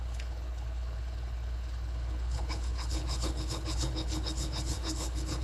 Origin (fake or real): fake